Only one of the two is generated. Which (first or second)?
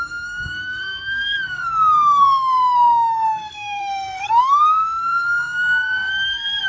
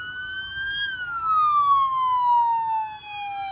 first